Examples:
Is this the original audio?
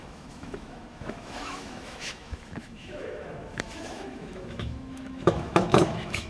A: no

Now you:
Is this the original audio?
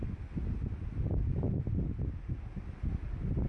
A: yes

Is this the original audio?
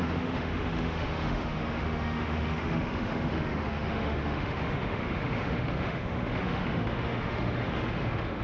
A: no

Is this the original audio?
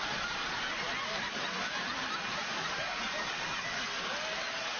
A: yes